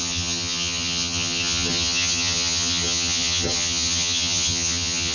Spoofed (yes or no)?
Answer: yes